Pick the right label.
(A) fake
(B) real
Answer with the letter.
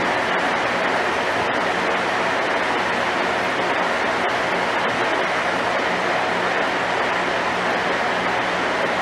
B